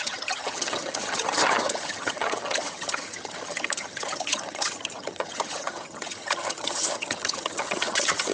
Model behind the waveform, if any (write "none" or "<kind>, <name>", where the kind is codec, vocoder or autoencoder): vocoder, HiFi-GAN